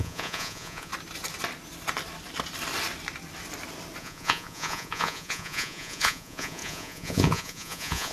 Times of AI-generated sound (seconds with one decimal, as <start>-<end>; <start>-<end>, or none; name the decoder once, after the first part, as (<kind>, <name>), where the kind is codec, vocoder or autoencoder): 0.0-0.9 (vocoder, Vocos); 4.0-8.1